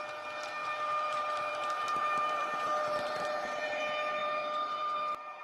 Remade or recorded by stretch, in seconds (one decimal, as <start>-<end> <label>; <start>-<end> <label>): 0.0-0.6 recorded; 0.6-3.8 remade; 3.8-4.2 recorded; 4.2-5.4 remade